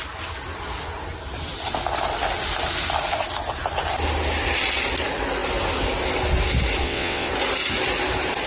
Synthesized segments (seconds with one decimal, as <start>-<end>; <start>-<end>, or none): 6.8-7.3